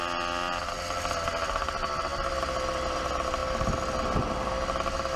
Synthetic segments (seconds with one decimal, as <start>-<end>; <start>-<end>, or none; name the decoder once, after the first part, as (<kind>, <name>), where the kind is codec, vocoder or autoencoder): none